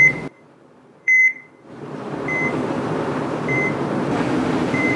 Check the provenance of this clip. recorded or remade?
remade